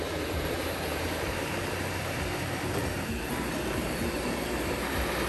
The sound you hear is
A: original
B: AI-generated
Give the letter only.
B